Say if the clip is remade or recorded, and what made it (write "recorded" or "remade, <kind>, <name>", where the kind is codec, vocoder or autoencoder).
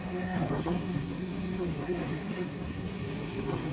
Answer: remade, codec, SNAC